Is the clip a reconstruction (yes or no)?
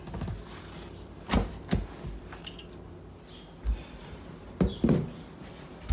no